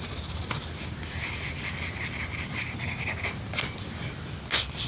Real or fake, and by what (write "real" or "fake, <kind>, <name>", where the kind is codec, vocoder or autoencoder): real